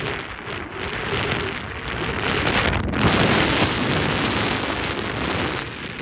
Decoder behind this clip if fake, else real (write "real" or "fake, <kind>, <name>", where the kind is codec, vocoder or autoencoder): real